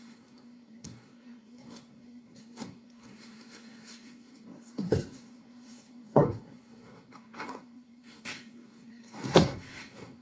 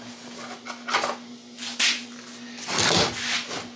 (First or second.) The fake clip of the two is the first